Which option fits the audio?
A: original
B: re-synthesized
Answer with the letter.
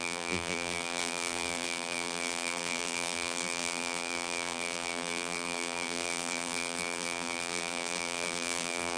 B